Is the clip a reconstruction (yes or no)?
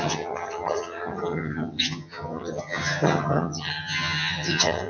yes